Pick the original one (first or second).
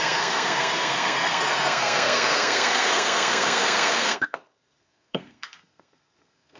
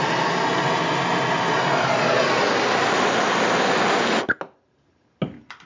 second